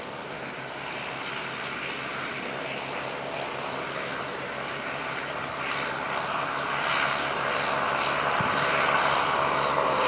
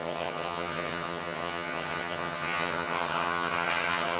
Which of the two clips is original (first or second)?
first